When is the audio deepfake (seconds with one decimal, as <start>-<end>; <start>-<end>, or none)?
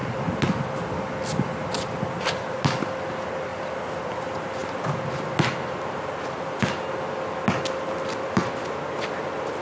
0.0-3.1; 3.5-4.1